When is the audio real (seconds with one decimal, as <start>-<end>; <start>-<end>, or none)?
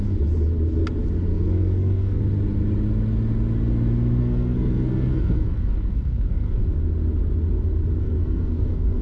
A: 0.0-1.3; 2.2-4.2; 6.6-8.0